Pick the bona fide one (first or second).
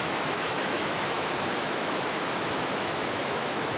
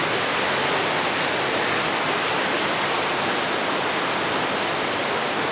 second